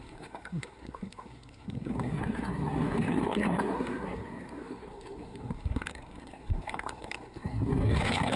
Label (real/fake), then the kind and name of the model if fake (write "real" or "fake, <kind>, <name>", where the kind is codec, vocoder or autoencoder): fake, codec, SNAC